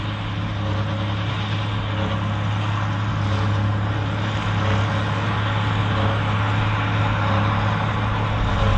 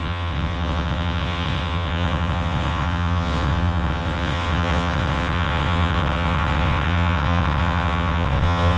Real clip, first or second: first